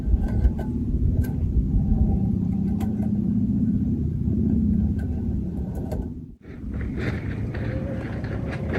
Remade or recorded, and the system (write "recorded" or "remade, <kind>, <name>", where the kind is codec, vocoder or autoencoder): remade, vocoder, BigVGAN v2